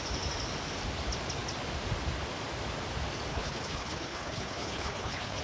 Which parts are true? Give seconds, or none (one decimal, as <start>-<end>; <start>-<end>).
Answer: 0.0-3.3